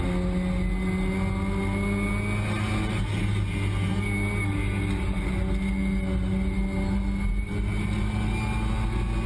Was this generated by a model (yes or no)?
no